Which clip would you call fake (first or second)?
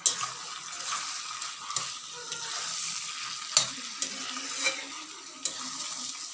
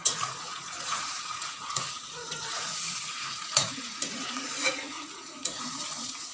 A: second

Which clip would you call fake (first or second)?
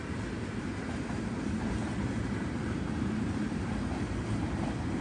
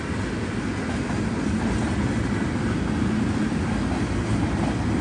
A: first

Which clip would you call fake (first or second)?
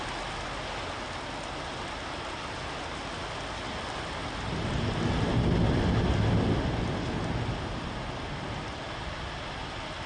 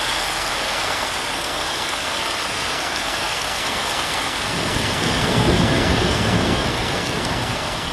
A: second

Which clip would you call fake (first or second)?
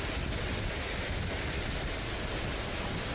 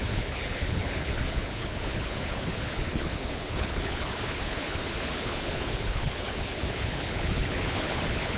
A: second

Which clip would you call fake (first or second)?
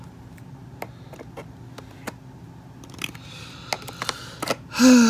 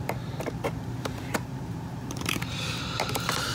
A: second